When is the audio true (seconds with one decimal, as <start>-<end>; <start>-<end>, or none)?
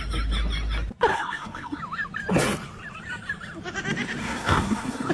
0.0-1.1; 1.8-4.2